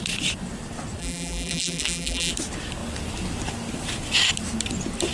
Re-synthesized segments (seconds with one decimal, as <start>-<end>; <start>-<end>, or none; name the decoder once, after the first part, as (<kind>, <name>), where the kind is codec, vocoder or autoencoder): 1.0-2.3 (vocoder, BigVGAN v2)